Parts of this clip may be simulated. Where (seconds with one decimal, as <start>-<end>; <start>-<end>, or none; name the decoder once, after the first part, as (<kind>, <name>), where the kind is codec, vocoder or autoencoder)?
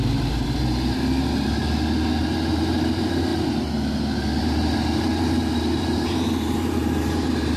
0.0-1.6 (vocoder, BigVGAN v2); 2.2-3.3; 4.4-7.6